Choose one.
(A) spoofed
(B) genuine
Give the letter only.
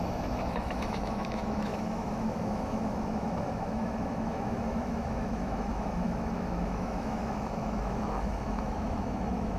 A